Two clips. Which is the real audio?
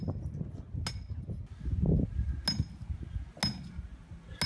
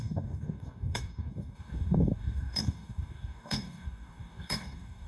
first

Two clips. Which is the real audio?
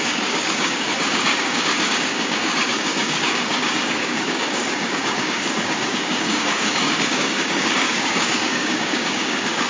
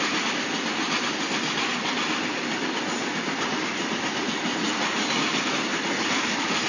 second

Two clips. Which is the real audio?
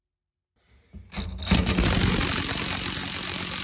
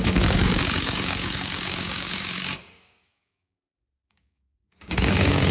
first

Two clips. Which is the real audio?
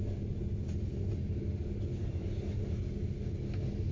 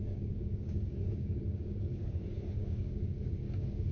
first